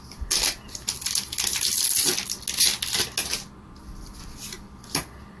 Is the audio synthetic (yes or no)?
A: no